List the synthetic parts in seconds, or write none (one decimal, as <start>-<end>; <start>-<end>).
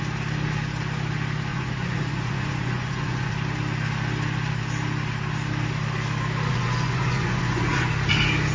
1.5-3.3; 6.5-7.9